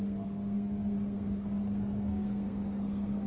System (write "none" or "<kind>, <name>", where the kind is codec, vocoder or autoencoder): codec, SNAC